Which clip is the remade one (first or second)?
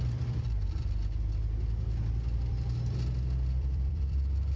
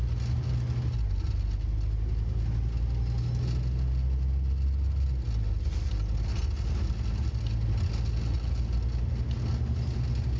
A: first